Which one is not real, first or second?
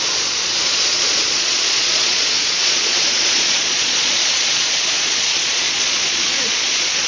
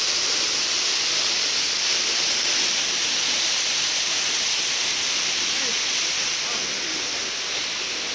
first